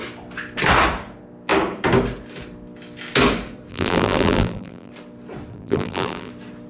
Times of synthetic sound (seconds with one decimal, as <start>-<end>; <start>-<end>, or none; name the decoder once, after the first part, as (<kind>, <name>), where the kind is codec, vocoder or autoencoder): 3.7-4.9 (vocoder, BigVGAN v2); 5.5-6.3